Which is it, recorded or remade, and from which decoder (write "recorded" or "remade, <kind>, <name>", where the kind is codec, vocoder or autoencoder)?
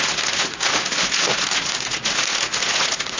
remade, vocoder, Vocos